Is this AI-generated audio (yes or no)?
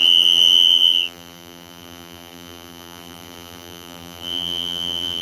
yes